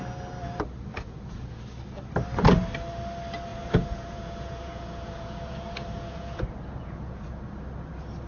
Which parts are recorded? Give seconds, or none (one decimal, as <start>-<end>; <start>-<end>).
0.0-0.9; 1.6-3.5; 7.3-8.3